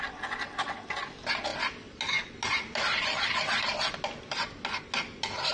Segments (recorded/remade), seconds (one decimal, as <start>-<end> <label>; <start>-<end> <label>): 0.0-5.5 recorded